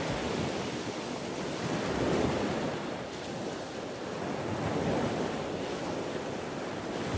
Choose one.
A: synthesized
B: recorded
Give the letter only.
B